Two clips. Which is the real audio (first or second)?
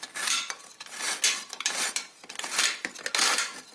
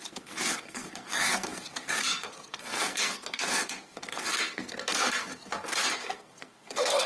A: first